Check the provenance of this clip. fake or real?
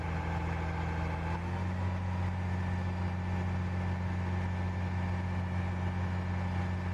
real